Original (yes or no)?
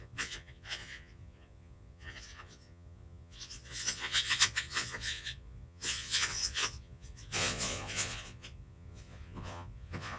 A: no